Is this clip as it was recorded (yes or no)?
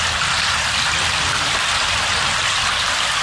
no